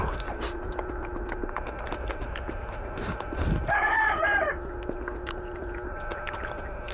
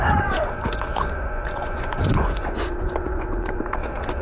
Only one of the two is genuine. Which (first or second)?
first